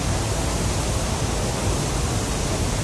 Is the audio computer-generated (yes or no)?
no